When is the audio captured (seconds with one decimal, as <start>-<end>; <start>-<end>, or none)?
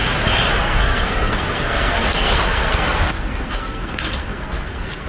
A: 0.0-0.6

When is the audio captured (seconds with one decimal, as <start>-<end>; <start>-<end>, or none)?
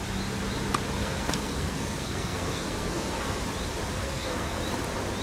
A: 0.0-1.0; 3.4-4.0; 4.6-5.2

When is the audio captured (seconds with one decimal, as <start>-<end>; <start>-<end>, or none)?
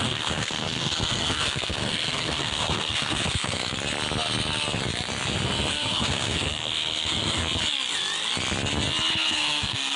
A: 3.6-5.7; 7.4-9.1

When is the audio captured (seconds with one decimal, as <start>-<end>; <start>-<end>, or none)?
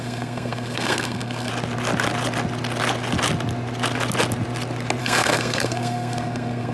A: 1.5-5.0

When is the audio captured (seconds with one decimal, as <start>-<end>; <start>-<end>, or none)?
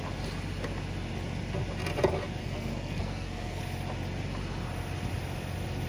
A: 0.0-2.4; 3.6-5.9